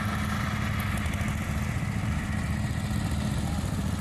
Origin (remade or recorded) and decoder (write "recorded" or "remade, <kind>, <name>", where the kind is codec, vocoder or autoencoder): recorded